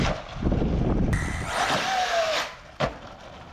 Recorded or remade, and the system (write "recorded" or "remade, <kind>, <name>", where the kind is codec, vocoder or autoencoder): recorded